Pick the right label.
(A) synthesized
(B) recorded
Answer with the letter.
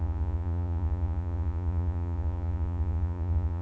A